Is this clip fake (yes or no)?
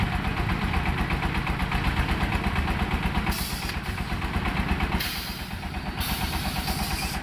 no